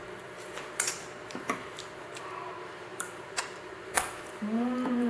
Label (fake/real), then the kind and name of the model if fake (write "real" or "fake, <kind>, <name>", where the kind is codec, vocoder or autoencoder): fake, vocoder, BigVGAN v2